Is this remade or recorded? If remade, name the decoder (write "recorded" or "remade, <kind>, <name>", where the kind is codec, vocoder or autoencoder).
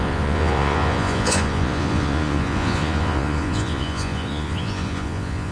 remade, vocoder, Vocos